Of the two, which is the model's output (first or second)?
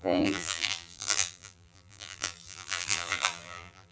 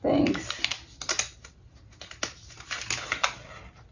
first